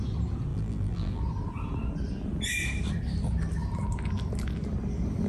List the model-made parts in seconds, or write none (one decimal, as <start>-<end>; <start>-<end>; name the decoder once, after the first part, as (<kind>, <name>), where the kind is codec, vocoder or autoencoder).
0.5-1.2 (vocoder, BigVGAN v2)